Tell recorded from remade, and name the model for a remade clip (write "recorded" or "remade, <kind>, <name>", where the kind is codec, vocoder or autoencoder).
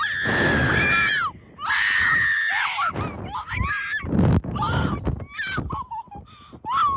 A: recorded